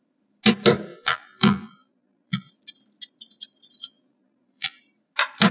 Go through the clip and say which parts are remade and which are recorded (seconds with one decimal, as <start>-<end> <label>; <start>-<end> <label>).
0.0-0.9 recorded; 0.9-2.5 remade; 2.5-3.8 recorded; 3.8-4.8 remade; 4.8-5.5 recorded